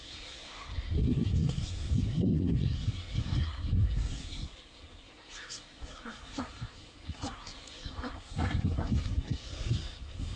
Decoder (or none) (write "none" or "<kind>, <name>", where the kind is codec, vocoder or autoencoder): codec, SNAC